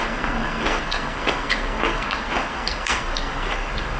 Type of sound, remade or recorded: remade